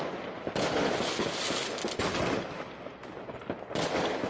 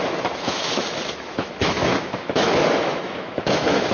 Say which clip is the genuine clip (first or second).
first